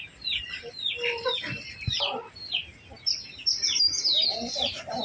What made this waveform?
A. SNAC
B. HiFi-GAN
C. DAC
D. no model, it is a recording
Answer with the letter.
D